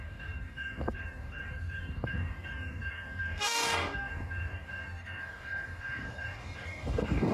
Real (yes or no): no